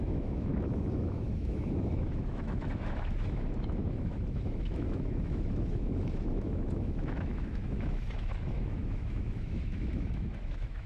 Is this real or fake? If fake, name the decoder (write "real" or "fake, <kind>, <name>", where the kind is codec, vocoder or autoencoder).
fake, autoencoder, DAC-VAE